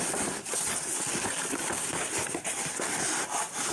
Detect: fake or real real